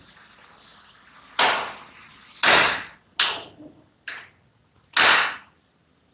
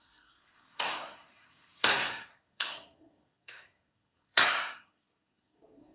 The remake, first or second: second